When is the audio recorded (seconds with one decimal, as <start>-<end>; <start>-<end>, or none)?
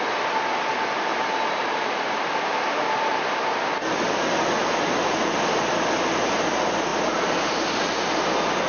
0.0-1.1; 3.2-6.9; 7.5-8.7